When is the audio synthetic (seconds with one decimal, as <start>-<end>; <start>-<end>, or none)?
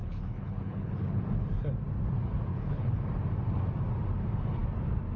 0.0-1.2; 2.5-3.0